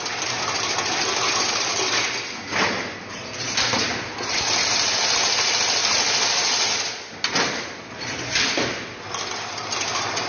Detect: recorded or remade recorded